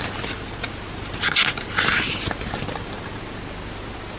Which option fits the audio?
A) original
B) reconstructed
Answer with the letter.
A